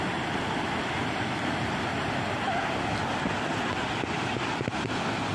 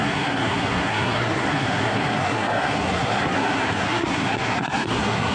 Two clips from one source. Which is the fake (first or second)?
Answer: second